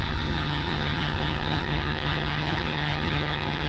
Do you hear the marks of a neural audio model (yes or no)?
yes